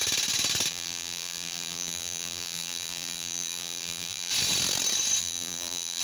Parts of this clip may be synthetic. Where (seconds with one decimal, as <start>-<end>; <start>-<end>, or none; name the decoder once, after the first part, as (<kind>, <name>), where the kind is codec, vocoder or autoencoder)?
0.7-4.3 (vocoder, BigVGAN v2); 5.2-6.0